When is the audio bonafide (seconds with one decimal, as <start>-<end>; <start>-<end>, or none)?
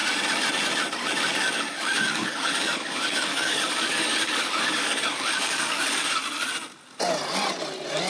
0.0-1.3; 6.2-8.1